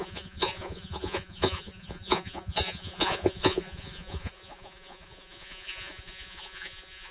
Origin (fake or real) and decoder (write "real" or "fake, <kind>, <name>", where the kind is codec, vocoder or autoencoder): fake, vocoder, Vocos